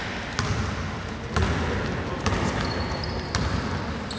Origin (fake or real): real